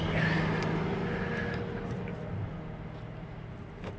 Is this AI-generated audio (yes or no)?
no